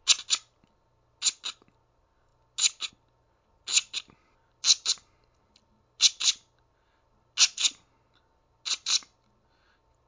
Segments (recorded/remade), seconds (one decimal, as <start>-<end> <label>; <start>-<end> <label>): 0.0-10.1 recorded